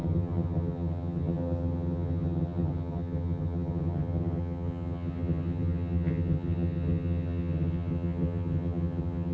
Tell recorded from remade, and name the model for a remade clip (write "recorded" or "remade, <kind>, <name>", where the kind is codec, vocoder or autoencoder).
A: remade, vocoder, HiFi-GAN